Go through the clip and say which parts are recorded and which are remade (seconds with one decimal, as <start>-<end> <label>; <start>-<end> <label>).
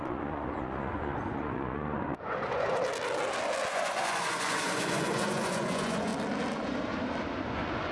0.0-2.8 remade; 2.8-3.7 recorded; 3.7-6.1 remade; 6.1-7.5 recorded; 7.5-7.9 remade